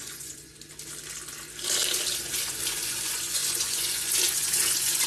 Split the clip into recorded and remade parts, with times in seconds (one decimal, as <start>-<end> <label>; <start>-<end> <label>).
0.0-0.5 remade; 0.5-2.1 recorded; 2.1-5.1 remade